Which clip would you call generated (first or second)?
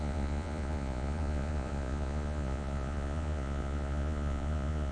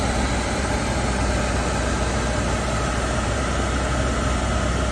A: first